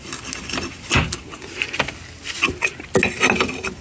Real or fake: real